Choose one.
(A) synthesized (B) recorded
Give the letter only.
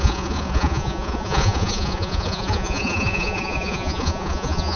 A